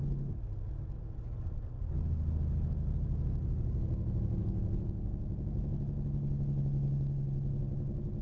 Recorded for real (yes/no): yes